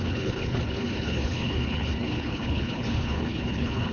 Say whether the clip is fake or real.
fake